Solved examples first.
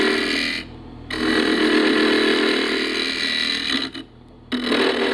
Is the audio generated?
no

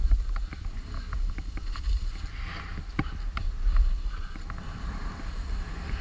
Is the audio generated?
no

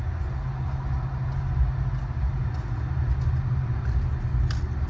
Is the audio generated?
no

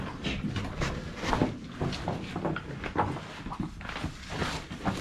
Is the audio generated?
no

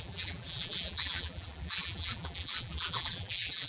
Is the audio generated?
yes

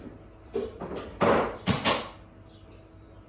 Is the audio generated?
no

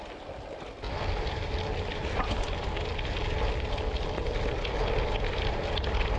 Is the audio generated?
no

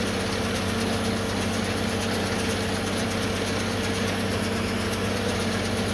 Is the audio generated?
no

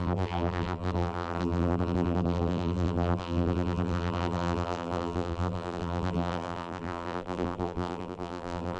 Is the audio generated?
yes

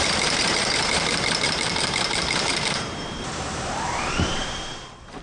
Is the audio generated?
yes